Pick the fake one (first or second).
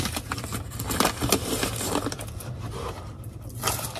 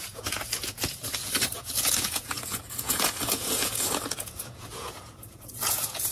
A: second